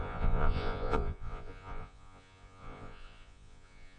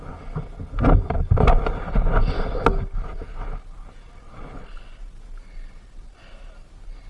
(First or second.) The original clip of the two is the second